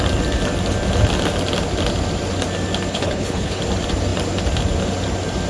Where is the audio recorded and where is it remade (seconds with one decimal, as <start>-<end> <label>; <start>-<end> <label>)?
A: 0.0-2.9 recorded; 2.9-3.6 remade; 3.6-5.5 recorded

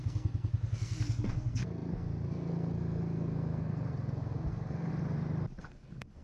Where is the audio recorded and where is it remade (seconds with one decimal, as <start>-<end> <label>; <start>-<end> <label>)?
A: 0.0-4.9 remade; 4.9-5.6 recorded; 5.6-6.2 remade

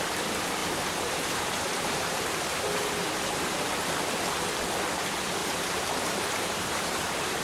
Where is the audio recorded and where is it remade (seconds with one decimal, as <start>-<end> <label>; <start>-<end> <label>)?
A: 0.0-0.6 recorded; 0.6-3.7 remade; 3.7-5.4 recorded; 5.4-7.4 remade

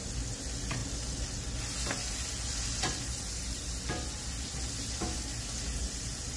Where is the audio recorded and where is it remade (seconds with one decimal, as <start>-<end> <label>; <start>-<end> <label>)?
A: 0.0-6.4 recorded

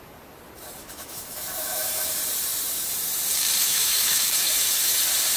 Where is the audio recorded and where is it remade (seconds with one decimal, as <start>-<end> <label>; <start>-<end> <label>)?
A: 0.0-0.8 recorded; 0.8-2.1 remade; 2.1-3.6 recorded; 3.6-5.0 remade; 5.0-5.4 recorded

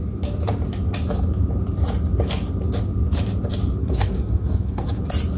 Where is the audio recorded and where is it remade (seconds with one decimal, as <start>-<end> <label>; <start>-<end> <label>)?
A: 0.0-3.8 recorded; 3.8-5.0 remade; 5.0-5.4 recorded

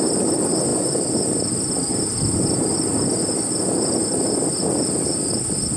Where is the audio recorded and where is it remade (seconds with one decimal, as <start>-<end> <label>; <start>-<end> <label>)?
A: 0.0-5.8 recorded

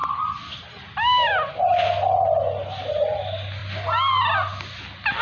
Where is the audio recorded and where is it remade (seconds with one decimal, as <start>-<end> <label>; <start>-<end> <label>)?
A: 0.0-5.2 recorded